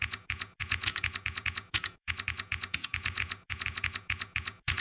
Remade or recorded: remade